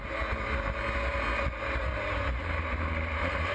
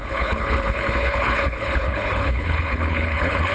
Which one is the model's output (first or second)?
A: second